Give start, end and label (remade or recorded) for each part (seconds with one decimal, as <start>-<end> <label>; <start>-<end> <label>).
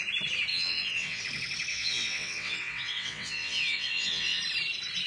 0.0-0.5 recorded; 0.5-1.2 remade; 1.2-1.7 recorded; 1.7-4.4 remade; 4.4-5.1 recorded